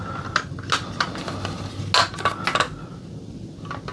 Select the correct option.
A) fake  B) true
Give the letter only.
B